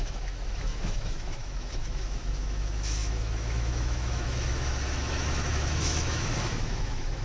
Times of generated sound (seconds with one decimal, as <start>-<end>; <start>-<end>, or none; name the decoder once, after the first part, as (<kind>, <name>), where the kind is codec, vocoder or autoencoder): 0.0-7.2 (autoencoder, DAC-VAE)